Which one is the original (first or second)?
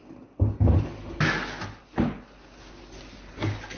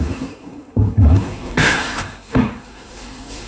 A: first